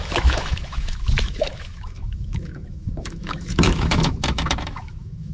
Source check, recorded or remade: remade